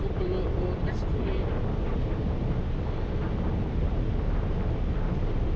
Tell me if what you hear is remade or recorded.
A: recorded